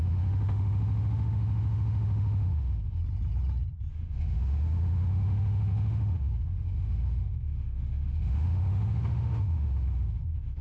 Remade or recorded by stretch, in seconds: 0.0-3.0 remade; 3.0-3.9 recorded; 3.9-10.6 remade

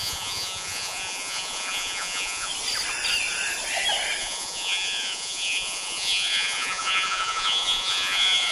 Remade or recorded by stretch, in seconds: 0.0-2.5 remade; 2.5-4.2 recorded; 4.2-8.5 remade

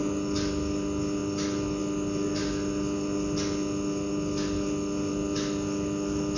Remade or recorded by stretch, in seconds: 0.0-6.4 recorded

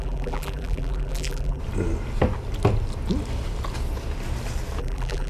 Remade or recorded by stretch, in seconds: 0.0-1.6 remade; 1.6-4.8 recorded; 4.8-5.3 remade

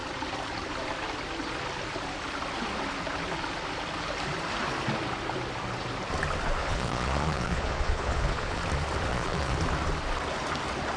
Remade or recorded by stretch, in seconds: 0.0-6.6 recorded; 6.6-8.6 remade; 8.6-9.1 recorded; 9.1-9.6 remade; 9.6-11.0 recorded

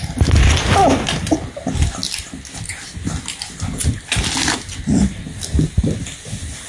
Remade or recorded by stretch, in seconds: 0.0-6.7 recorded

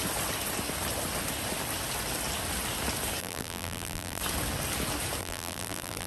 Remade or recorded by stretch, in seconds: 0.0-3.2 recorded; 3.2-4.2 remade; 4.2-5.2 recorded; 5.2-6.1 remade